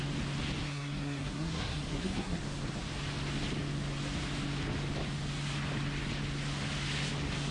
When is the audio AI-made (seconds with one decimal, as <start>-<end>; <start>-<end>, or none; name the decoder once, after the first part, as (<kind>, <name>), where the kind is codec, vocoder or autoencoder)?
0.6-2.4 (codec, SNAC)